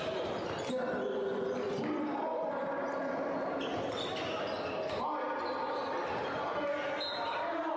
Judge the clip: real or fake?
real